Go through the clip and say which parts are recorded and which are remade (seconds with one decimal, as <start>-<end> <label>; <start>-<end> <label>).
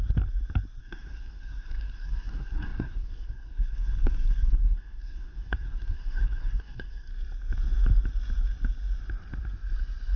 0.0-0.8 recorded; 0.8-7.1 remade; 7.1-10.2 recorded